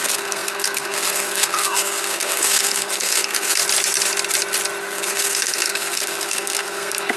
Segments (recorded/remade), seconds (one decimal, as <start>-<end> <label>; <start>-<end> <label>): 0.0-3.6 remade; 3.6-4.8 recorded; 4.8-7.2 remade